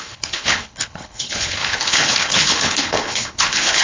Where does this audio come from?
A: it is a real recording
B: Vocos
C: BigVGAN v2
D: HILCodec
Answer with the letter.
D